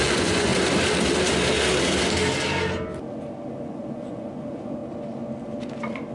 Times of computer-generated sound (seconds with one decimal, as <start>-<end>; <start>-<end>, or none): 0.0-0.5; 3.6-4.8